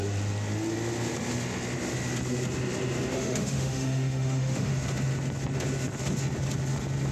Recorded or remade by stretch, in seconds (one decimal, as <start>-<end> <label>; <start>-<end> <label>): 0.0-3.1 recorded; 3.1-4.7 remade; 4.7-7.1 recorded